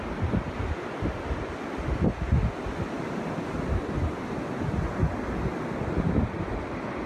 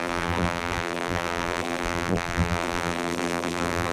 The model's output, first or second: second